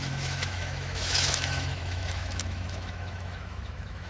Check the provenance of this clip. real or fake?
fake